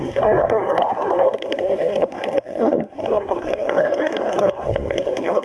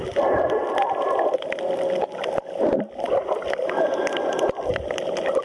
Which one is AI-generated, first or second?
first